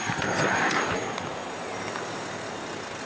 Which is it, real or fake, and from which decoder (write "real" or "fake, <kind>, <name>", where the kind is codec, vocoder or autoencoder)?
real